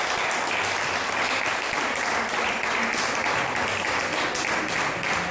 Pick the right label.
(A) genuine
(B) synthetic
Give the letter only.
A